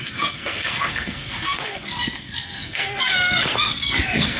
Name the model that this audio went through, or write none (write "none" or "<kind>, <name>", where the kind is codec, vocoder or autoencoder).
codec, SNAC